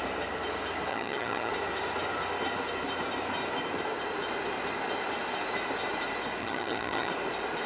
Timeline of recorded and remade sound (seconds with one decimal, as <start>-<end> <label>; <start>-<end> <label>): 0.0-0.9 recorded; 0.9-1.5 remade; 1.5-6.4 recorded; 6.4-7.1 remade; 7.1-7.7 recorded

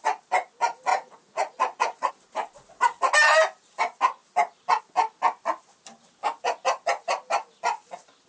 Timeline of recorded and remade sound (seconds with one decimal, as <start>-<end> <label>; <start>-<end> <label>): 0.0-0.9 recorded; 0.9-2.1 remade; 2.1-8.3 recorded

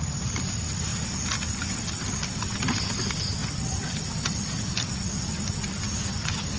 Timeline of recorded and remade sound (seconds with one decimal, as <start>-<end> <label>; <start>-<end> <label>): 0.0-6.6 remade

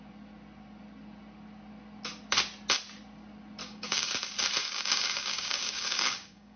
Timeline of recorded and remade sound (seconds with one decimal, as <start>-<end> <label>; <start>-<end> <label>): 0.0-3.6 recorded; 3.6-4.1 remade; 4.1-4.6 recorded; 4.6-6.6 remade

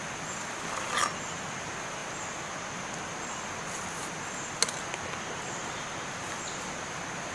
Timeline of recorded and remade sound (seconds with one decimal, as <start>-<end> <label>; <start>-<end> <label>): 0.0-7.3 recorded

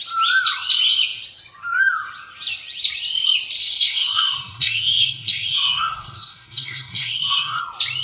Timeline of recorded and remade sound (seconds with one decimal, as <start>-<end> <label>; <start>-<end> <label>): 0.0-3.6 recorded; 3.6-7.6 remade; 7.6-8.0 recorded

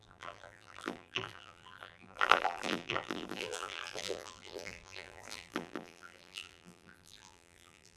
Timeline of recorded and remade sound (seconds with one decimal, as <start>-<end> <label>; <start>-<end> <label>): 0.0-8.0 remade

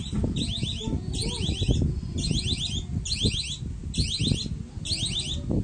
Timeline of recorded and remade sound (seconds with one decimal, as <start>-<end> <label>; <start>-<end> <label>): 0.0-5.6 recorded